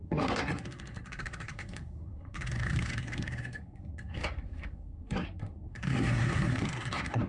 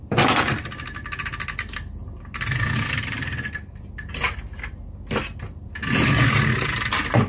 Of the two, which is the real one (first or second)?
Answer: second